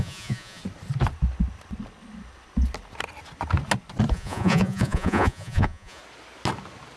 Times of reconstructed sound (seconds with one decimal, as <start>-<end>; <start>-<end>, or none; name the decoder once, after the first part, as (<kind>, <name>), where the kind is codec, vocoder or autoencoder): 0.0-0.6 (vocoder, Vocos); 4.1-6.0

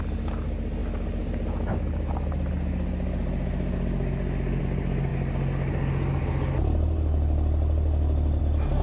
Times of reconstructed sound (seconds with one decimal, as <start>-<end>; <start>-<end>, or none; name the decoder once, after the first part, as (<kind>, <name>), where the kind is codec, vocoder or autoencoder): none

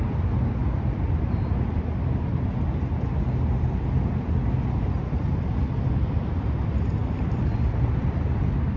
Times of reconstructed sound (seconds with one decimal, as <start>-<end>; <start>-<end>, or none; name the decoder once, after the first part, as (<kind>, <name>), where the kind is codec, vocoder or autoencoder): 0.6-1.8 (vocoder, BigVGAN v2); 7.0-8.8

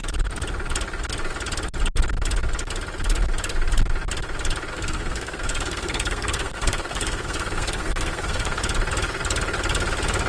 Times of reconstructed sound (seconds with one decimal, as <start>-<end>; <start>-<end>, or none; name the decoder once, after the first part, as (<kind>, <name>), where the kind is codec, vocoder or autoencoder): 4.7-8.6 (codec, SNAC)

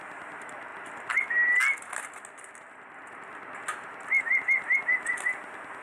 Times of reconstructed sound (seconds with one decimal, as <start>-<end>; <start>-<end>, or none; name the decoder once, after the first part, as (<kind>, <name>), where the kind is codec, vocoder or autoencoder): none